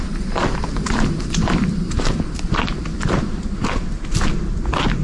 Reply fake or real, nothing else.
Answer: real